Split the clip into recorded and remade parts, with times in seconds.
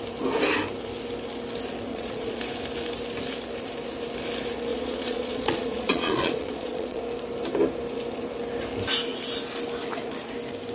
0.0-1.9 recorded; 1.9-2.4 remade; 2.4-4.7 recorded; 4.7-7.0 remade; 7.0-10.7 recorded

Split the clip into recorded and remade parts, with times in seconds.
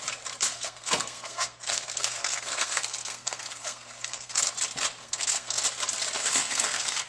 0.0-0.5 recorded; 0.5-4.5 remade; 4.5-5.0 recorded; 5.0-5.6 remade; 5.6-6.2 recorded; 6.2-7.1 remade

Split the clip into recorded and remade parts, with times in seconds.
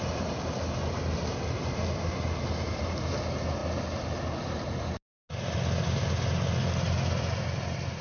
0.0-8.0 recorded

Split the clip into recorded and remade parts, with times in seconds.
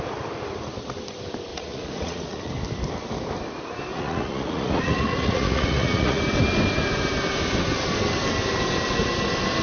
0.0-1.5 recorded; 1.5-2.5 remade; 2.5-3.9 recorded; 3.9-6.2 remade; 6.2-9.6 recorded